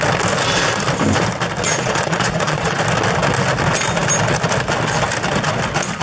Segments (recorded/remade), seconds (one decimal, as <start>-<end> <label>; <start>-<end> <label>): 0.0-1.7 recorded; 1.7-2.8 remade; 2.8-6.0 recorded